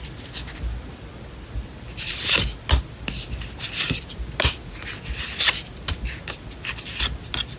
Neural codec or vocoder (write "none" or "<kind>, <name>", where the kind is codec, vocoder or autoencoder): none